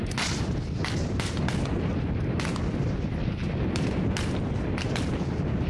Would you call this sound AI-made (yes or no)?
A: no